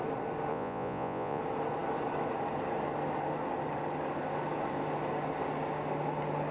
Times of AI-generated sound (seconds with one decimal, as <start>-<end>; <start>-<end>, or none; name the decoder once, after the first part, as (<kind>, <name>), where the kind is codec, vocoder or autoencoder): 0.5-1.4 (vocoder, Vocos)